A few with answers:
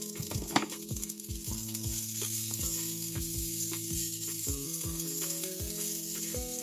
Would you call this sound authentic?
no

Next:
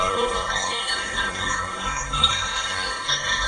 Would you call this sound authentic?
no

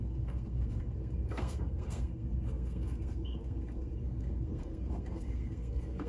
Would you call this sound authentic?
no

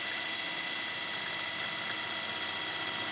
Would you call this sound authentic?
yes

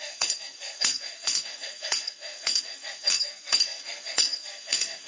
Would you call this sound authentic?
no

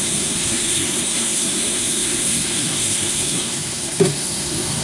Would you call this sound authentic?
no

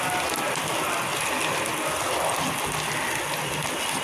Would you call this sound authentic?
yes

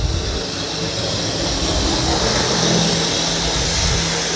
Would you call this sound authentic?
yes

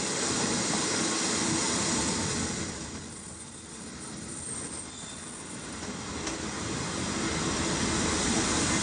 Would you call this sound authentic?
yes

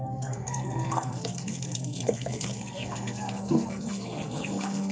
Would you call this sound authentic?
no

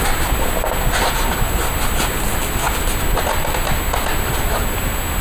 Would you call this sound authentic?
yes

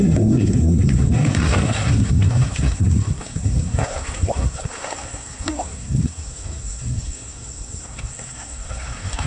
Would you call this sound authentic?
no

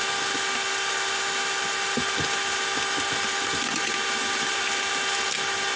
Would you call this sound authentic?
yes